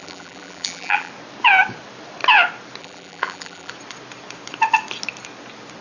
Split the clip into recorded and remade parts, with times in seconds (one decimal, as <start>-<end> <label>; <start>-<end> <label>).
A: 0.0-1.1 remade; 1.1-2.8 recorded; 2.8-3.7 remade; 3.7-5.8 recorded